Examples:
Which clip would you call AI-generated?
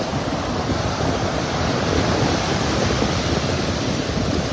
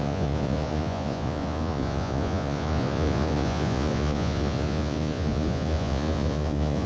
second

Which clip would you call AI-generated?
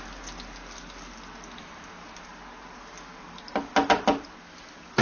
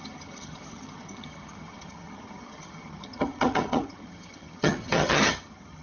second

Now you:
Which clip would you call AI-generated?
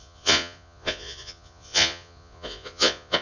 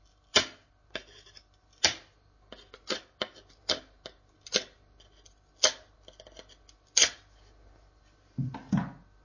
first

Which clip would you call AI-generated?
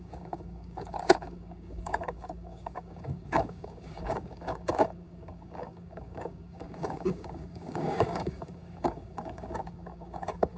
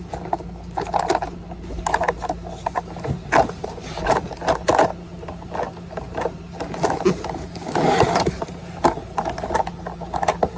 first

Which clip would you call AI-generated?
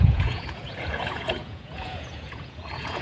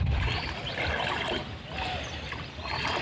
first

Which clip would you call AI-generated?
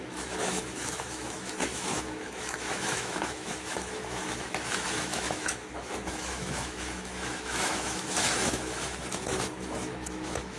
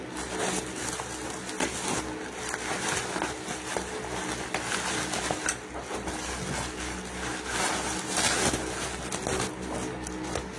first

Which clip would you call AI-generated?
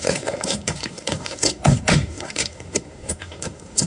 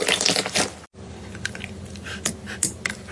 first